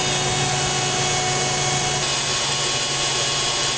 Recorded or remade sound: recorded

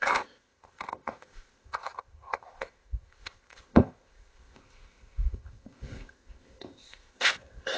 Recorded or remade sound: remade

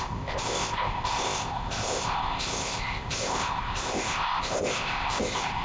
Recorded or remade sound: remade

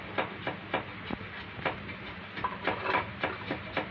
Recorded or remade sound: recorded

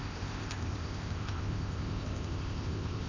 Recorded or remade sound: remade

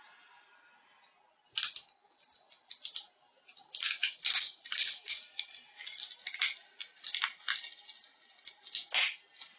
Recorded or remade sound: recorded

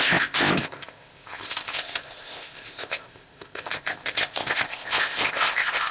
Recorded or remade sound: remade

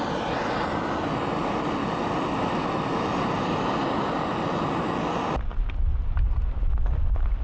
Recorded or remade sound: recorded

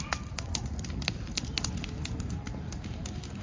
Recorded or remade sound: recorded